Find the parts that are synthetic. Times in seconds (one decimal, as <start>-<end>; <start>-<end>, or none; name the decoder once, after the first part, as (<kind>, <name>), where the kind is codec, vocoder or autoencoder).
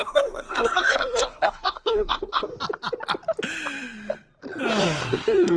0.0-2.5 (codec, SNAC); 4.8-5.6